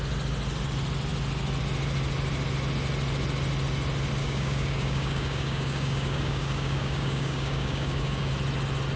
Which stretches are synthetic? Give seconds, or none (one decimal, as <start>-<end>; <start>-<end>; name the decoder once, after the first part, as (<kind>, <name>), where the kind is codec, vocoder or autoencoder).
4.2-8.3 (codec, DAC)